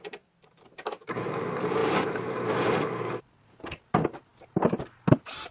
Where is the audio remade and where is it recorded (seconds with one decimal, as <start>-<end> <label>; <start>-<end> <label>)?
0.0-5.5 remade